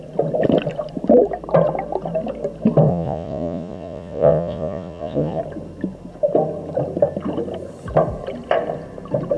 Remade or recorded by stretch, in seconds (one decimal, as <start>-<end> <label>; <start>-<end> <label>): 0.0-2.9 recorded; 2.9-5.4 remade; 5.4-9.4 recorded